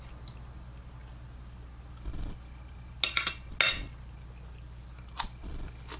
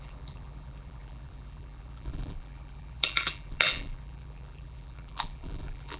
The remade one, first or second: second